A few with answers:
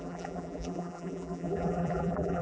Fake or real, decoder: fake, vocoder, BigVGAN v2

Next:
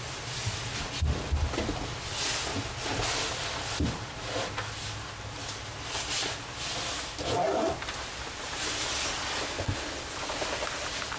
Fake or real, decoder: real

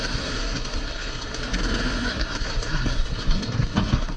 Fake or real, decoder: fake, codec, SNAC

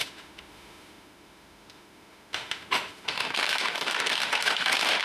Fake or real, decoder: fake, autoencoder, DAC-VAE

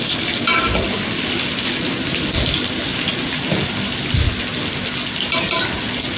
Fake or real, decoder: real